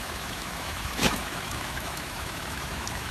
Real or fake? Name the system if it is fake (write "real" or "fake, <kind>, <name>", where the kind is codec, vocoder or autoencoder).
fake, autoencoder, DAC-VAE